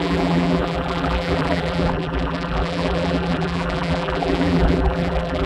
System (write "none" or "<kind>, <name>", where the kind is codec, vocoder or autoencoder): vocoder, BigVGAN v2